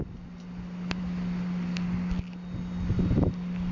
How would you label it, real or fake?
real